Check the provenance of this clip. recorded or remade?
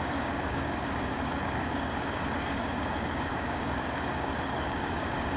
remade